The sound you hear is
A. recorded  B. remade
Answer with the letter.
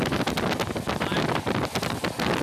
A